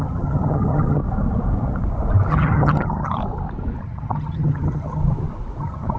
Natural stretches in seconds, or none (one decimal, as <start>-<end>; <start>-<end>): 1.0-2.3; 3.2-3.8; 5.0-5.6